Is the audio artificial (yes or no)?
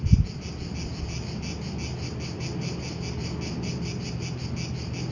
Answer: no